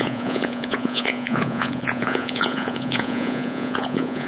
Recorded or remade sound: remade